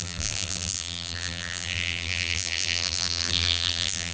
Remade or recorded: remade